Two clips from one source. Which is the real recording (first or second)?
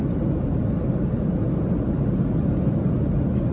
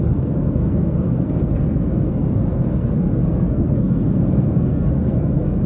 first